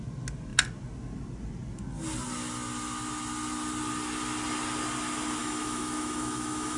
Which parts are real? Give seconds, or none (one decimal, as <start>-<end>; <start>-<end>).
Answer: 0.0-5.4